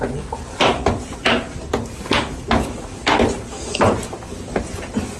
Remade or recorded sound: recorded